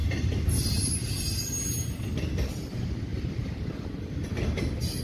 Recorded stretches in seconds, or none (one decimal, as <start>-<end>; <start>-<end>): 0.7-3.1; 4.3-5.0